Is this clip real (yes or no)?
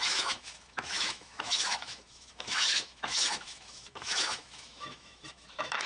no